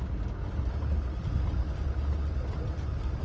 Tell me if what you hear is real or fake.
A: real